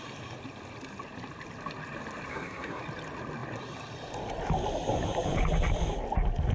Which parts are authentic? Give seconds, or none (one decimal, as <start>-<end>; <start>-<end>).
0.0-2.3; 2.8-6.5